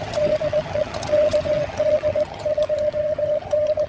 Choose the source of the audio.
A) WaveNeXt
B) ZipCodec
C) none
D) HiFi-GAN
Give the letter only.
D